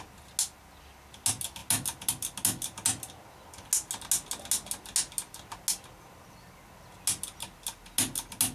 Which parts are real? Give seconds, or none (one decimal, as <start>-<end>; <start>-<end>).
0.0-8.5